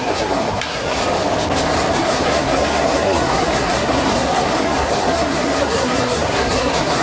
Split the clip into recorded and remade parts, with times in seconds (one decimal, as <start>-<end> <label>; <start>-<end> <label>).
0.0-1.0 remade; 1.0-1.9 recorded; 1.9-7.0 remade